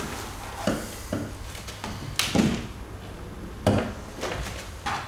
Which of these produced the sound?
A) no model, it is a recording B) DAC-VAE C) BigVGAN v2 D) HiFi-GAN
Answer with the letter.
A